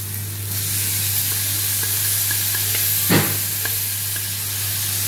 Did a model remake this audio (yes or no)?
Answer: no